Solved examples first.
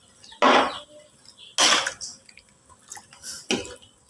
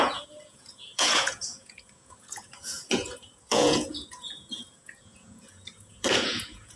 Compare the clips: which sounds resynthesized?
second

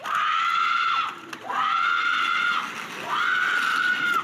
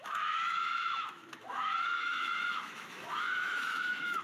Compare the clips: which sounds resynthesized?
second